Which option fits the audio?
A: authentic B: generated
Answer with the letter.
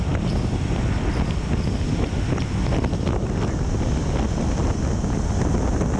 A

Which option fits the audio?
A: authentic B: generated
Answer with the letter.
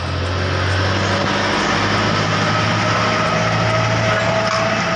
A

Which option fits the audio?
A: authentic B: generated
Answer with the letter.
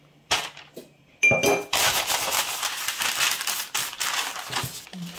A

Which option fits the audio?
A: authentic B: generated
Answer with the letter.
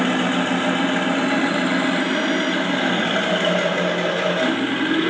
A